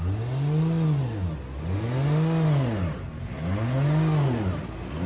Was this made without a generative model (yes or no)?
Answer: yes